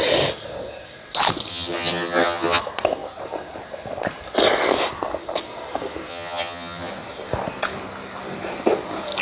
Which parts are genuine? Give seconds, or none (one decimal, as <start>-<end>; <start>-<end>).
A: 0.0-1.5; 2.6-6.1; 6.9-9.2